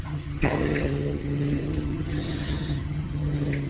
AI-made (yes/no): yes